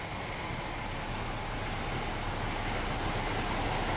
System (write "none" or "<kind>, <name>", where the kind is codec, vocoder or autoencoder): none